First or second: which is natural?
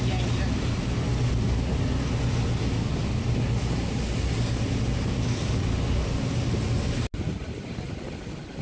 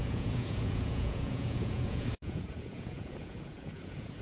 first